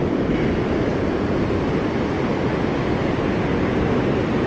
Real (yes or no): yes